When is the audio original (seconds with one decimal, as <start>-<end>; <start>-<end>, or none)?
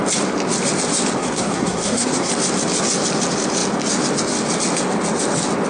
0.0-1.2; 2.3-5.7